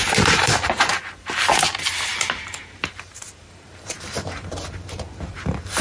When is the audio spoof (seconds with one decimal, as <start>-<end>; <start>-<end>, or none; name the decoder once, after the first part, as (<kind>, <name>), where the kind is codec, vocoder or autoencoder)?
0.0-0.9 (vocoder, BigVGAN v2); 2.1-5.8